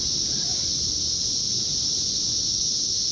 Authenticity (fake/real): real